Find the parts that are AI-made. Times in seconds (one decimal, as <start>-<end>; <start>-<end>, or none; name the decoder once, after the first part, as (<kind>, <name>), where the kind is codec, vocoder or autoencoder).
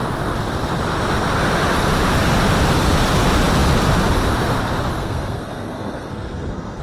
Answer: 5.0-6.8 (codec, SNAC)